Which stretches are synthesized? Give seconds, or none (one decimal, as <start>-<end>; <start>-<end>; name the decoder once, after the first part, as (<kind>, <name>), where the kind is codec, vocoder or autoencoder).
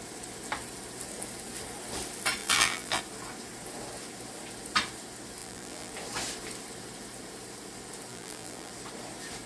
2.4-3.0 (vocoder, BigVGAN v2); 5.4-5.9; 8.1-8.7